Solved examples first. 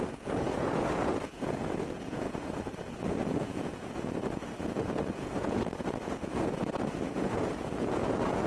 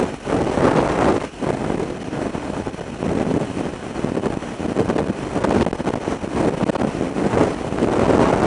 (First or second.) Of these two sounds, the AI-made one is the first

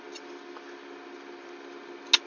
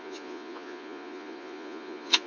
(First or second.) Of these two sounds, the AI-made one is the second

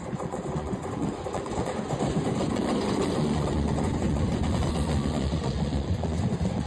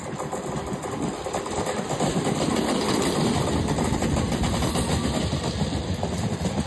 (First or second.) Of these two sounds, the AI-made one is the first